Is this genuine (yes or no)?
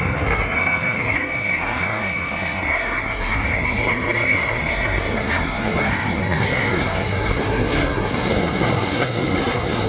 no